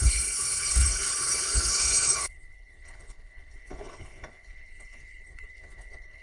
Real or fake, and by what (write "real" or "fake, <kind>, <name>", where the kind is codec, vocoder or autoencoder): fake, codec, HILCodec